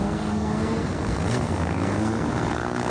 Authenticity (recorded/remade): remade